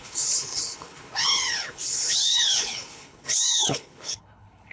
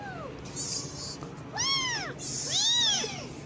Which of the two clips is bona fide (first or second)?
second